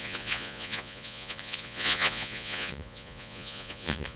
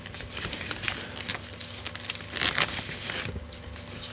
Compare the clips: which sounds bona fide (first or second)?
second